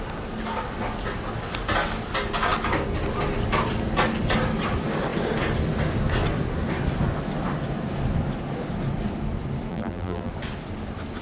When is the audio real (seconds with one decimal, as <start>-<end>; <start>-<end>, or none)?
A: 0.0-9.7; 10.3-11.2

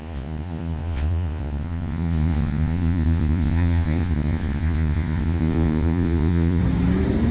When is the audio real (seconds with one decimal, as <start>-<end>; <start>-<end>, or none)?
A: 6.6-7.3

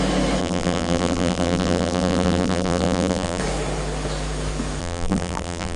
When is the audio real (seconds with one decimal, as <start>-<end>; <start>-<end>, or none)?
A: 0.0-0.4; 3.4-4.8

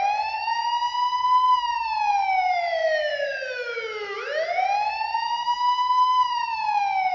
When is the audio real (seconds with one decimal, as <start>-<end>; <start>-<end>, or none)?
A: 0.6-1.5

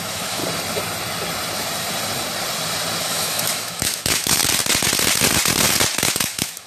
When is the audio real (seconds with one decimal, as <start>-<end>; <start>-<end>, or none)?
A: 0.4-3.0; 4.4-6.0

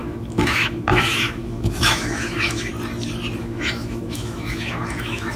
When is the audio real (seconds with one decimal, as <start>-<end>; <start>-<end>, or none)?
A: 2.7-3.4

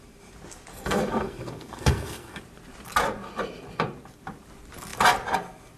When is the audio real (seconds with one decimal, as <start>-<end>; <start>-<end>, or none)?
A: 0.0-0.7; 2.4-5.8